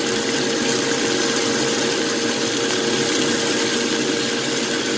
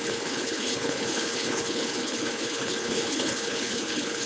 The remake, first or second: second